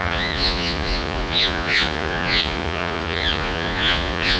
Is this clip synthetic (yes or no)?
yes